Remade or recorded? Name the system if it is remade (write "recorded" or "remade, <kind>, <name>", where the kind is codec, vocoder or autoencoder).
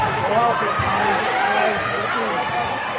recorded